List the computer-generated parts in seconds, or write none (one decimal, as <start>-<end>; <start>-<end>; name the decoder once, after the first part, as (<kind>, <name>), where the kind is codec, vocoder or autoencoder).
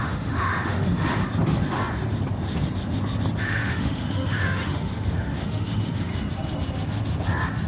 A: 0.0-1.2 (autoencoder, DAC-VAE); 3.4-6.1